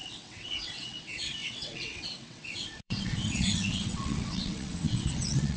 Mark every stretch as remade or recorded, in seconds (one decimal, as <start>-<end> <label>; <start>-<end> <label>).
0.0-5.6 remade